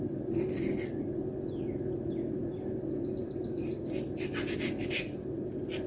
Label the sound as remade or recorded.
recorded